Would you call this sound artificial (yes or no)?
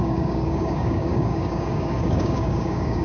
yes